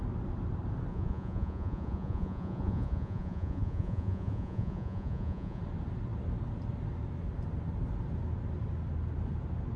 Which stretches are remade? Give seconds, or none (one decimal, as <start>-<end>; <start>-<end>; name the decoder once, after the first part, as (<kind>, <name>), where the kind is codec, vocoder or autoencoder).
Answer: 0.9-5.6 (vocoder, Vocos)